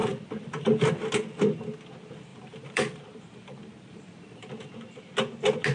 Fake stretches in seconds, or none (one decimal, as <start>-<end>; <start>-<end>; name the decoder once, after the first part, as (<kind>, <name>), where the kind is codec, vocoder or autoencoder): 0.0-1.0 (vocoder, BigVGAN v2); 2.3-4.5